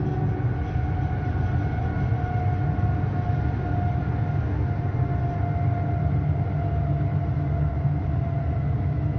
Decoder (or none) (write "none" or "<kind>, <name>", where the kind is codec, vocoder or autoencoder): none